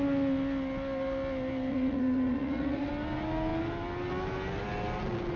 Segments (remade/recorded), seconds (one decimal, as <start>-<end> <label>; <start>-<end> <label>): 0.0-1.7 recorded; 1.7-2.9 remade; 2.9-5.4 recorded